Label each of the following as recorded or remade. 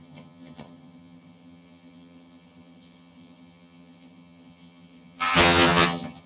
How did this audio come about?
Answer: remade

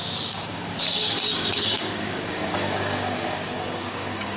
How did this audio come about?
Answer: remade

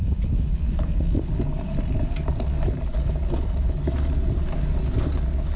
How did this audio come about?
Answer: recorded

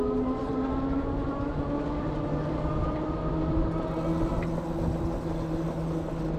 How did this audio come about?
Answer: recorded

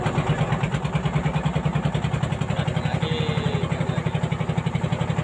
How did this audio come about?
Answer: recorded